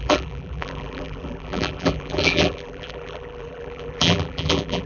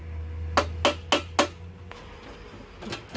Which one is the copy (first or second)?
first